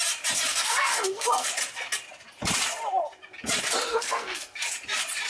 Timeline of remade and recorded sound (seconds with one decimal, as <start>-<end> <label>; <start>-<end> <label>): 0.0-0.5 recorded; 0.5-1.5 remade; 1.5-3.9 recorded; 3.9-4.6 remade; 4.6-5.3 recorded

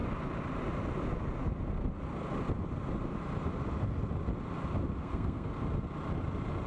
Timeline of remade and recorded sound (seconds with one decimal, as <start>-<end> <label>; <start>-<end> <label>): 0.0-5.0 recorded; 5.0-5.5 remade; 5.5-6.7 recorded

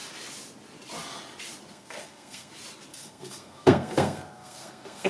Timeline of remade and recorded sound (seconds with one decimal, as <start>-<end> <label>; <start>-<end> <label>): 0.0-1.7 recorded; 1.7-2.5 remade; 2.5-2.9 recorded; 2.9-5.1 remade

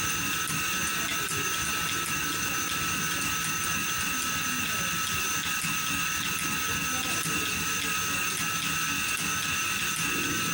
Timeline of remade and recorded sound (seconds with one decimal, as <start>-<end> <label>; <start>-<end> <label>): 0.0-10.5 recorded

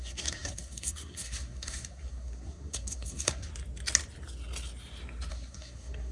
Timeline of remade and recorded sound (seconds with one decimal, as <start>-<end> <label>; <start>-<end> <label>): 0.0-3.5 remade; 3.5-5.3 recorded; 5.3-6.1 remade